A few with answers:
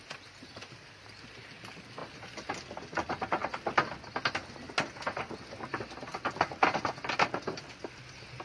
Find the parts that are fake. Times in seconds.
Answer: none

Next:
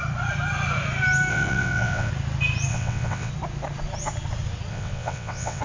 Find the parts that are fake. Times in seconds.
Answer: 1.3-2.1 (vocoder, WaveNeXt); 2.7-3.3; 4.7-5.6

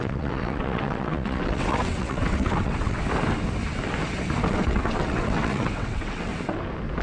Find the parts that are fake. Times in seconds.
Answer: 0.0-3.0 (vocoder, WaveNeXt); 4.5-6.3

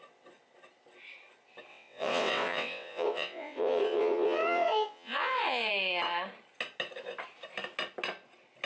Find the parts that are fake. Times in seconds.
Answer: 1.7-5.7 (vocoder, WaveNeXt)